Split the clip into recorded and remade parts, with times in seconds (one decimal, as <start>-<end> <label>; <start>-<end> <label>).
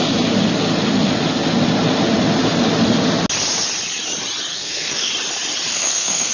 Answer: 0.0-4.5 recorded; 4.5-5.1 remade; 5.1-5.7 recorded; 5.7-6.3 remade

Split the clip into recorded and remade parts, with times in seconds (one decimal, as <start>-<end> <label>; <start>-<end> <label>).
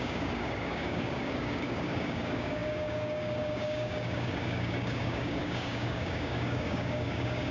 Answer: 0.0-7.5 remade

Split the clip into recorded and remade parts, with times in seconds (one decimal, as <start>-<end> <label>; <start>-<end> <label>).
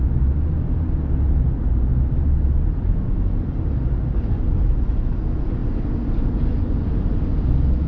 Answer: 0.0-7.9 recorded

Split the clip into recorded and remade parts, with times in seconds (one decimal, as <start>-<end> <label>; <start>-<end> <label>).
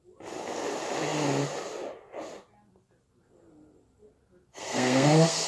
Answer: 0.0-4.5 recorded; 4.5-5.5 remade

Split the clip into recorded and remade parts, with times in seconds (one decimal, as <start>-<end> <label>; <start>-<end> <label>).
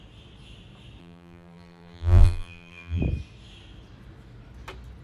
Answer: 0.0-1.0 recorded; 1.0-3.0 remade; 3.0-5.0 recorded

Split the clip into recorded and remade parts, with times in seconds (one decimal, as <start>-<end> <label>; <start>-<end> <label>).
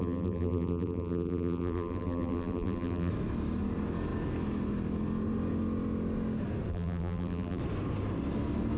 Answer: 0.0-3.1 remade; 3.1-6.7 recorded; 6.7-7.6 remade; 7.6-8.8 recorded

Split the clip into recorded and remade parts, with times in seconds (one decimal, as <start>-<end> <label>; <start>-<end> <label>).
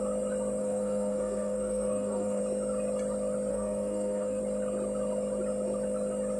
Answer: 0.0-0.6 recorded; 0.6-2.4 remade; 2.4-3.5 recorded; 3.5-4.4 remade; 4.4-6.4 recorded